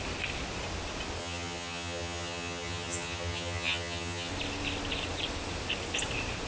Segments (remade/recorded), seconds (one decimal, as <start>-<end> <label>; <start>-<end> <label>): 0.0-1.2 recorded; 1.2-4.3 remade; 4.3-6.5 recorded